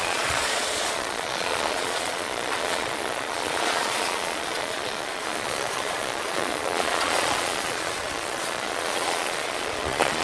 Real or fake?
fake